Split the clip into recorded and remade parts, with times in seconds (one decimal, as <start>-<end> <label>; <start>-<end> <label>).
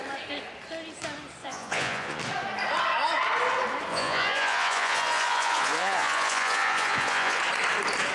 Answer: 0.0-1.4 recorded; 1.4-2.2 remade; 2.2-3.9 recorded; 3.9-7.4 remade; 7.4-8.1 recorded